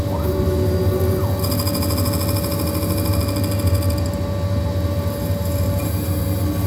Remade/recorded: recorded